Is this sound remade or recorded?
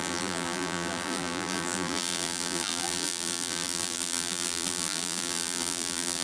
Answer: remade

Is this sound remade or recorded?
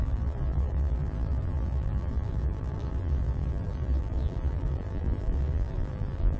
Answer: remade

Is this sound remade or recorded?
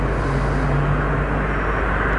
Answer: recorded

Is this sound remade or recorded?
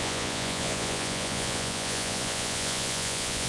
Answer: remade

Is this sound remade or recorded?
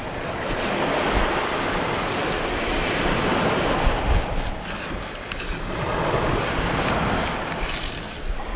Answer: recorded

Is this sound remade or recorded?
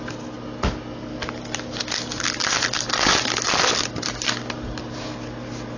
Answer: recorded